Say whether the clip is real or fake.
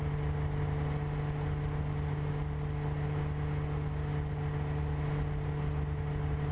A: real